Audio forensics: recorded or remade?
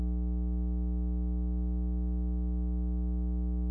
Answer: recorded